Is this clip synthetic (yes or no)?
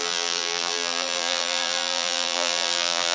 yes